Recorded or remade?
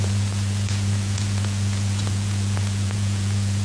remade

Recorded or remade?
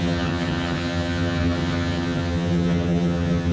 remade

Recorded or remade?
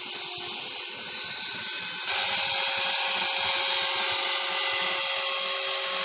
recorded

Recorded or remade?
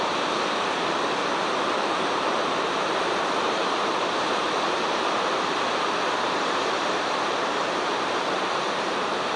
remade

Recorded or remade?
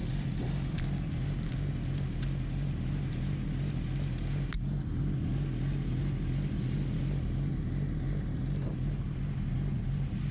recorded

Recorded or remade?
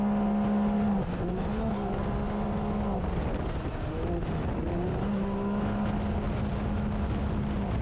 recorded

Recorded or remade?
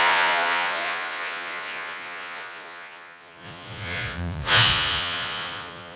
remade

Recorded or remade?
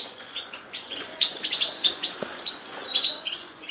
remade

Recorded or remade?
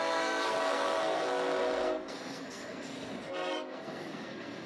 remade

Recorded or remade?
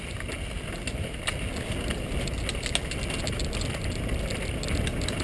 recorded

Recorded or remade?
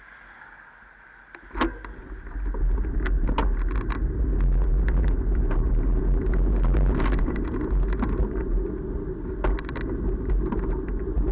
recorded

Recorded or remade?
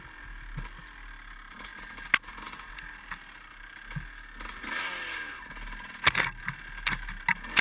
recorded